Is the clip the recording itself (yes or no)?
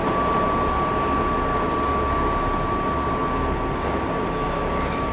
yes